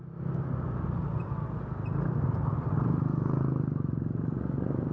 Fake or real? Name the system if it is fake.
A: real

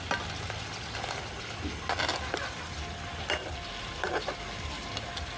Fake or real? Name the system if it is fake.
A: real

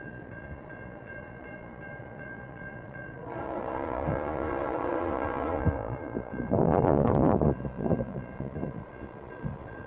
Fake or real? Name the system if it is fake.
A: fake, vocoder, Vocos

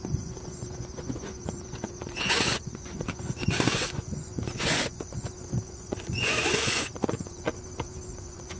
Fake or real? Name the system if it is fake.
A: fake, vocoder, Vocos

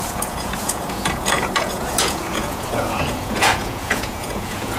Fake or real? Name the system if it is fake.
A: fake, vocoder, Vocos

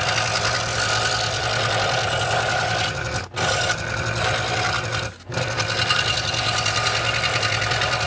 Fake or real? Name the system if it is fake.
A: real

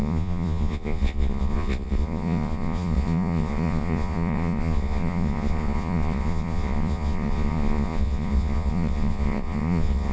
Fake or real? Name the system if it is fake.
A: fake, vocoder, Vocos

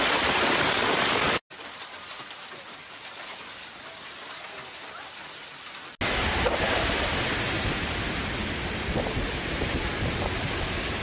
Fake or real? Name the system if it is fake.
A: real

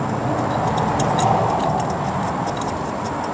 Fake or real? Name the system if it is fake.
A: real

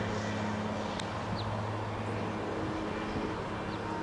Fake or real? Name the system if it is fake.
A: real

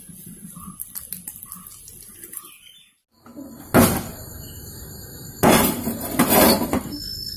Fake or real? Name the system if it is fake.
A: real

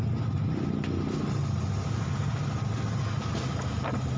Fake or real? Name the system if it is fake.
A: real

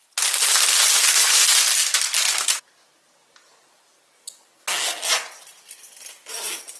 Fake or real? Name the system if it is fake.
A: real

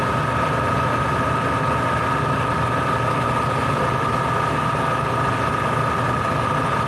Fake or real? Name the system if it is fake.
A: real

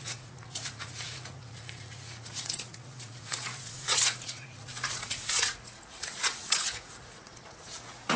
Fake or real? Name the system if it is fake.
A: fake, vocoder, Vocos